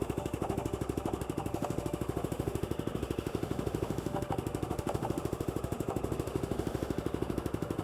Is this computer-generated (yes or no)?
yes